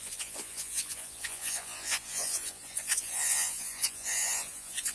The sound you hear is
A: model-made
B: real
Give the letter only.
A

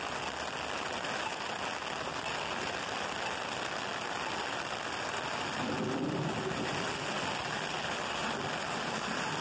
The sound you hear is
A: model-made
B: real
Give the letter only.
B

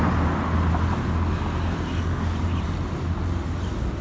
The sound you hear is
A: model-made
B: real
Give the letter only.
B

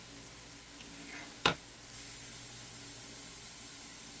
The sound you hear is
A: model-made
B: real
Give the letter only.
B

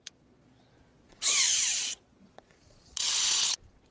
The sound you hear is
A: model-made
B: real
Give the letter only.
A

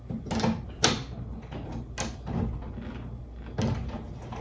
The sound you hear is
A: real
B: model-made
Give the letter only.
A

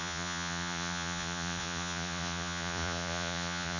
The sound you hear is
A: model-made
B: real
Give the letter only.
A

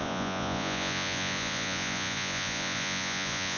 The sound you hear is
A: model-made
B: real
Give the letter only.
A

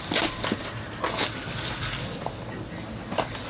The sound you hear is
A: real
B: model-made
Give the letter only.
A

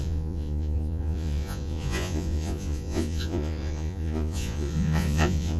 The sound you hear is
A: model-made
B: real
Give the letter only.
A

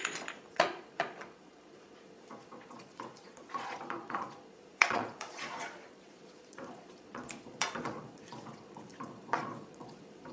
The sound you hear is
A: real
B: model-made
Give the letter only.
B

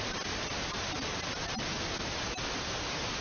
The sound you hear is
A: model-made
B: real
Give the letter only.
B